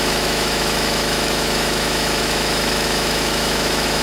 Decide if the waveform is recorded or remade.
remade